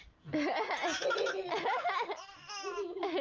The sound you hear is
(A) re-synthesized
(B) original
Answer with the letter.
B